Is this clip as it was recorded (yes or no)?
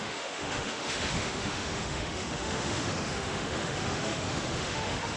no